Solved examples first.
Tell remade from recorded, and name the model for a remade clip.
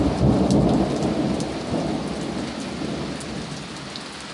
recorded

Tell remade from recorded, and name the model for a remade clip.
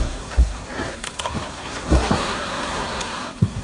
remade, codec, SNAC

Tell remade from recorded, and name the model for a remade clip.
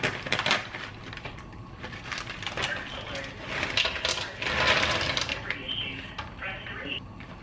recorded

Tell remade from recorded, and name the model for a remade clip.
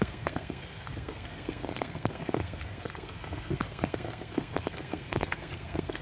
remade, codec, SNAC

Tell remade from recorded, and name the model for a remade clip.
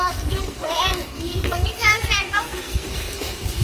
remade, codec, SNAC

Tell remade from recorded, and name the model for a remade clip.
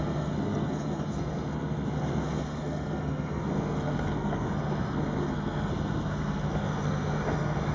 remade, codec, SNAC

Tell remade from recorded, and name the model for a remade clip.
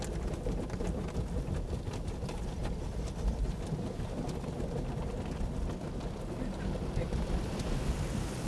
recorded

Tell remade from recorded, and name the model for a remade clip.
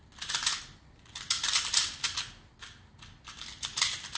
recorded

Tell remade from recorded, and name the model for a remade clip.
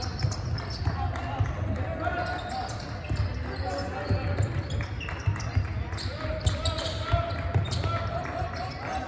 recorded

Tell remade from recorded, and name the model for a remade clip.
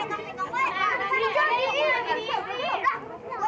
recorded